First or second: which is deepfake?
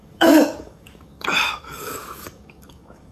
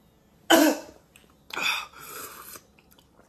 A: first